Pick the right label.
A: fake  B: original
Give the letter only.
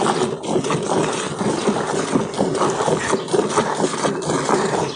B